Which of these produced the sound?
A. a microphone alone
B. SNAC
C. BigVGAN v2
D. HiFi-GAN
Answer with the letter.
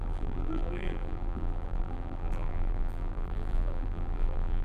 C